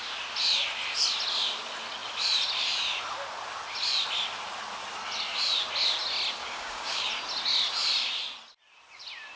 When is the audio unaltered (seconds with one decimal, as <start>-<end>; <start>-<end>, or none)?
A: 0.0-6.4; 7.1-9.4